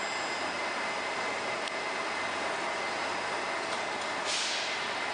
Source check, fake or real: real